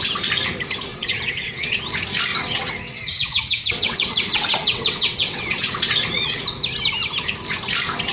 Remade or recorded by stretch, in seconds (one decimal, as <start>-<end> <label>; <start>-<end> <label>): 0.0-0.9 recorded; 0.9-1.8 remade; 1.8-2.3 recorded; 2.3-6.4 remade; 6.4-8.1 recorded